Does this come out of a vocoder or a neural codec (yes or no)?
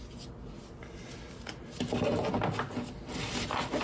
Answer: no